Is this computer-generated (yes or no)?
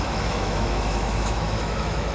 yes